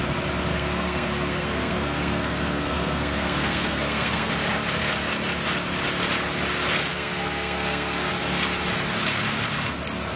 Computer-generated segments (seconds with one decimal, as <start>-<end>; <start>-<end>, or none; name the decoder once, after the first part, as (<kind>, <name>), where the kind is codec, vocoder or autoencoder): 0.5-4.3 (codec, SNAC); 6.9-8.1